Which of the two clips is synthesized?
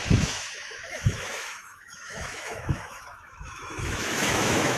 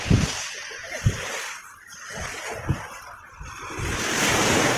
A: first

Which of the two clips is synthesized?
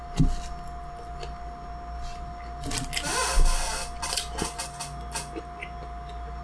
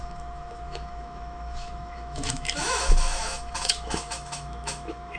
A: second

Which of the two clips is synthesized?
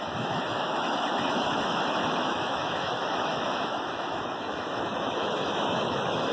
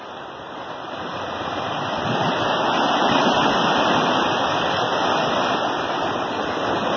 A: first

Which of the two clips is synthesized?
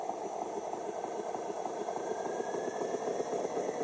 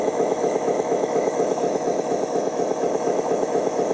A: second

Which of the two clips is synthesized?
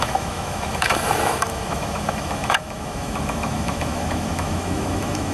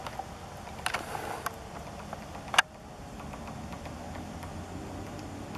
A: first